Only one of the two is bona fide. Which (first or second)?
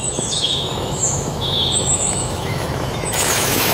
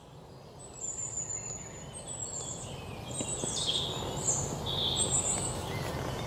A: second